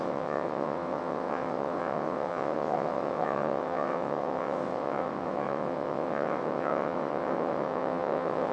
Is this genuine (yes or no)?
no